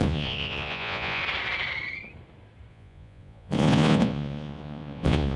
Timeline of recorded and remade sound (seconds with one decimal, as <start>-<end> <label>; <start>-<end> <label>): 0.0-1.2 remade; 1.2-2.7 recorded; 2.7-5.4 remade